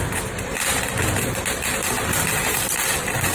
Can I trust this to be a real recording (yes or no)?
no